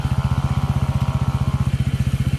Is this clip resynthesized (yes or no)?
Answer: no